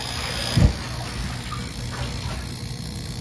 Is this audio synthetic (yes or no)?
no